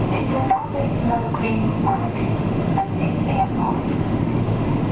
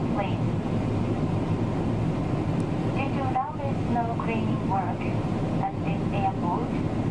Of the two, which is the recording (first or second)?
second